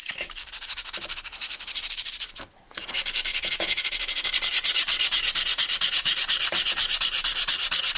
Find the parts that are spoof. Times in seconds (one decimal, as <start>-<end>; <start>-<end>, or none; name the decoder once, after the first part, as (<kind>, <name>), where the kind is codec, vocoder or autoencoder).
0.0-2.9 (vocoder, BigVGAN v2); 3.3-8.0